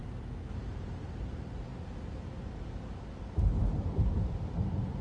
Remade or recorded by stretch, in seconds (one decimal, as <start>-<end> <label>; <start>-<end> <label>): 0.0-0.6 recorded; 0.6-1.7 remade; 1.7-5.0 recorded